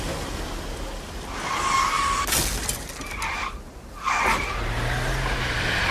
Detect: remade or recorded recorded